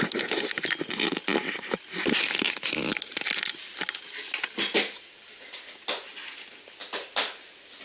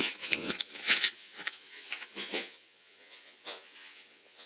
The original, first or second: first